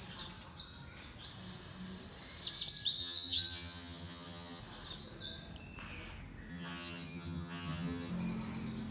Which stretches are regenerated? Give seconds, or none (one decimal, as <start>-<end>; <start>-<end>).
3.0-4.6; 6.5-8.1